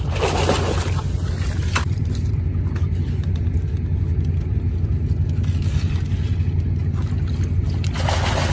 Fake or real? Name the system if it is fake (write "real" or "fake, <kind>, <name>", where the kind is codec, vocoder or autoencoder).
real